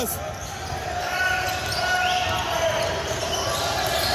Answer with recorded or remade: recorded